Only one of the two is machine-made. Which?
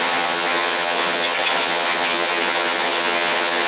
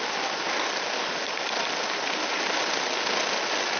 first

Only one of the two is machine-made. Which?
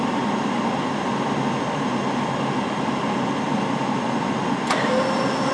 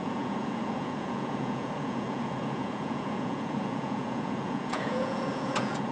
second